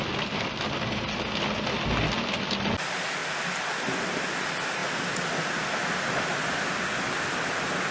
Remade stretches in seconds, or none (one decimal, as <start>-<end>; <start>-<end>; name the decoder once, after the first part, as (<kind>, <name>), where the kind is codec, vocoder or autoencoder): none